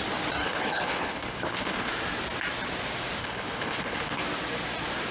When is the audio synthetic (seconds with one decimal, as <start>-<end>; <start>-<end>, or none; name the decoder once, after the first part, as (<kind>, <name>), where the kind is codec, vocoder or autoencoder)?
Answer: 0.4-1.9 (codec, HILCodec); 3.2-4.2